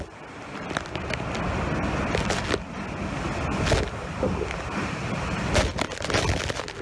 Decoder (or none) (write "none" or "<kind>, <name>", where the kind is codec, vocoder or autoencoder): none